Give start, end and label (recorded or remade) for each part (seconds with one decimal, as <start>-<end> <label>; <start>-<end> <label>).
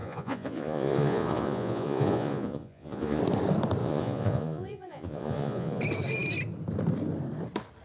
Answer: 0.0-3.2 remade; 3.2-3.8 recorded; 3.8-5.8 remade; 5.8-7.8 recorded